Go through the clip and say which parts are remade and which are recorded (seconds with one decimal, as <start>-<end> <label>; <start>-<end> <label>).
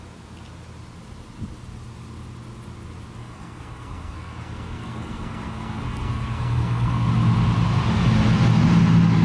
0.0-3.2 recorded; 3.2-7.1 remade; 7.1-9.2 recorded